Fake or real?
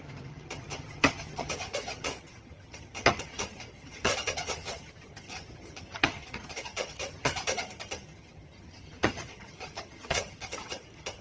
fake